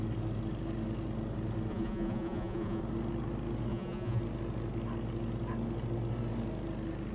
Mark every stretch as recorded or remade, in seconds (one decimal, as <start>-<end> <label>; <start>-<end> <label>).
0.0-1.7 recorded; 1.7-2.8 remade; 2.8-3.7 recorded; 3.7-4.2 remade; 4.2-7.1 recorded